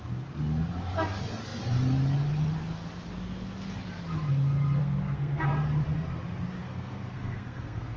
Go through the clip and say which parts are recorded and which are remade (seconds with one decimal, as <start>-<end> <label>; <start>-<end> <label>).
0.0-4.8 recorded; 4.8-5.5 remade; 5.5-6.6 recorded; 6.6-8.0 remade